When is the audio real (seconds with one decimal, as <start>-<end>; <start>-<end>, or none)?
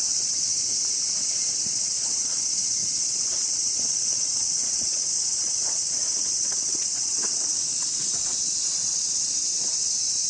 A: 0.5-1.5